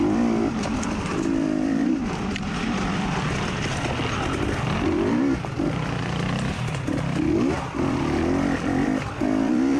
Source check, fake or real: fake